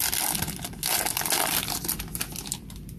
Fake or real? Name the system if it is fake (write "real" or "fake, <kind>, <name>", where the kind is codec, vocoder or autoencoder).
real